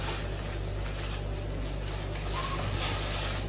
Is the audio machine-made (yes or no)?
no